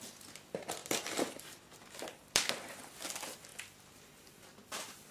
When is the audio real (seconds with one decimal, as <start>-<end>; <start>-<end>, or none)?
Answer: 0.0-0.8; 1.4-2.2; 2.8-5.1